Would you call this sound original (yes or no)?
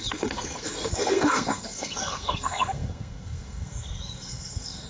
no